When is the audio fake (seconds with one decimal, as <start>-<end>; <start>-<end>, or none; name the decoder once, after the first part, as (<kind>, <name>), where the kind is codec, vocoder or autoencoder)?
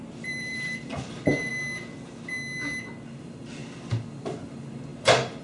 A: 0.0-1.5 (vocoder, BigVGAN v2); 3.2-3.6; 4.4-5.4